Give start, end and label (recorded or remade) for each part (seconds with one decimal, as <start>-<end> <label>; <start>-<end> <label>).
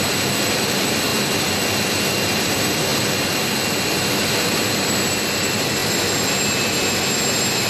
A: 0.0-7.7 recorded